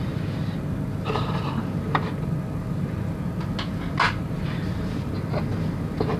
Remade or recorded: recorded